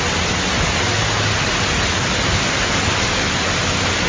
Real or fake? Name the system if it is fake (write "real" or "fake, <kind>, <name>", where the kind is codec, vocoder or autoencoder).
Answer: real